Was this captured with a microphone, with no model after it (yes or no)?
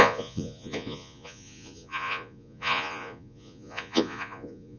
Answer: no